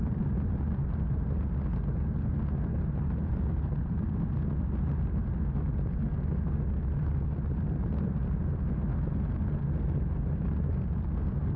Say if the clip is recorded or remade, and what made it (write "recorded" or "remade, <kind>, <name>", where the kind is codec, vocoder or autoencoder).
recorded